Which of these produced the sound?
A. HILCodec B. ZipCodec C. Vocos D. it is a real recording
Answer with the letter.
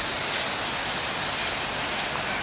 D